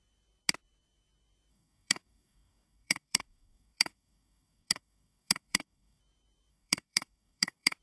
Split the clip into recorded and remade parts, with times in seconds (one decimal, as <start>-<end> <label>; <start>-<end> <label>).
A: 0.0-1.5 recorded; 1.5-6.0 remade; 6.0-6.5 recorded; 6.5-7.8 remade